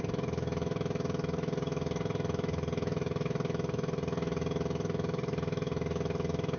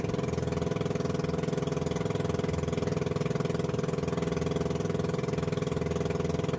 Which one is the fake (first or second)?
first